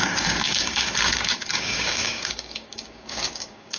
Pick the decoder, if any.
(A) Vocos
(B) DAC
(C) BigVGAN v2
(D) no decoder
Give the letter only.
B